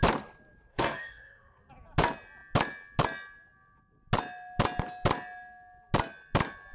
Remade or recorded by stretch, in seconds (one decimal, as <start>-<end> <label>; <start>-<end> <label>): 0.0-0.7 recorded; 0.7-1.7 remade; 1.7-6.7 recorded